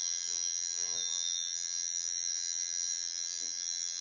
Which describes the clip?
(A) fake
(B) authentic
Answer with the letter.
A